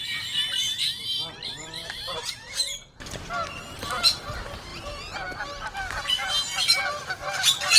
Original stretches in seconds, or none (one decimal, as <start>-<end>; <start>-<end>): 0.0-0.6; 2.5-7.8